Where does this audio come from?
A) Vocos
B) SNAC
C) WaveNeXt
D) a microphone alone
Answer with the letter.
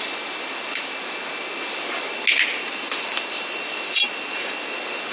D